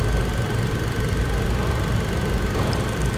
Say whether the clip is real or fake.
real